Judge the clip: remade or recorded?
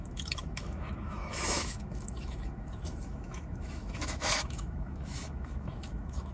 remade